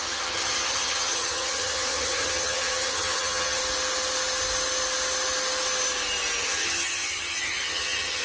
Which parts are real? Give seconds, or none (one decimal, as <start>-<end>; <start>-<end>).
3.6-6.4